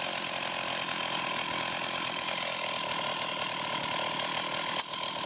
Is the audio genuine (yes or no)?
yes